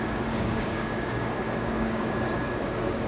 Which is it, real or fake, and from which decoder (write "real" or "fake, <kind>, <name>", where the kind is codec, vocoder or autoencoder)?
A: fake, codec, DAC